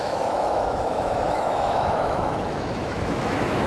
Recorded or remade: remade